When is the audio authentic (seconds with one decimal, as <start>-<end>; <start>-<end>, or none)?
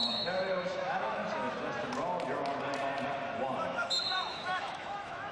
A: 1.2-3.6